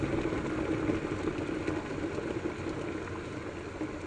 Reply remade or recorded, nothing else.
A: recorded